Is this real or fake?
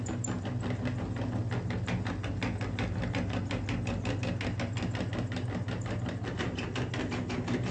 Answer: real